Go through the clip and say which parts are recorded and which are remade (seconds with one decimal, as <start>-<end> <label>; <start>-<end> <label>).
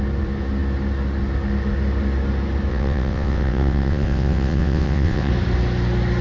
0.0-2.7 recorded; 2.7-5.3 remade; 5.3-6.2 recorded